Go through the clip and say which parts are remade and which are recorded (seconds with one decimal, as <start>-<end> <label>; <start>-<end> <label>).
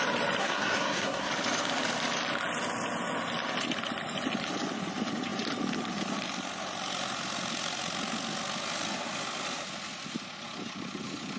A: 0.0-0.4 recorded; 0.4-1.3 remade; 1.3-11.4 recorded